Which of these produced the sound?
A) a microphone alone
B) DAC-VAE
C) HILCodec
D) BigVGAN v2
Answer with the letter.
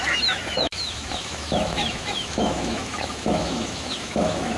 B